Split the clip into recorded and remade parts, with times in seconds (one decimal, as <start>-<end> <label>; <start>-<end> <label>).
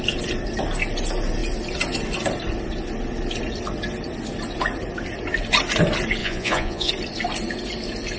0.0-6.2 recorded; 6.2-6.9 remade; 6.9-8.2 recorded